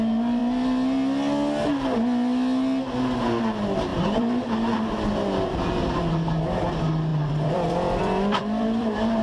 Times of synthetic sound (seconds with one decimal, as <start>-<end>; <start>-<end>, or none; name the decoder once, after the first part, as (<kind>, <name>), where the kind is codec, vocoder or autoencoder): 3.9-5.9 (vocoder, BigVGAN v2); 7.1-9.2